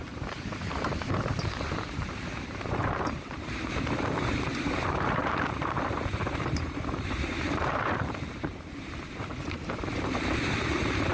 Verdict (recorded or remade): remade